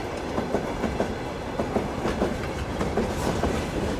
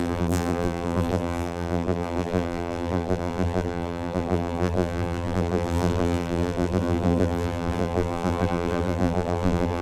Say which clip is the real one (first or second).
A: first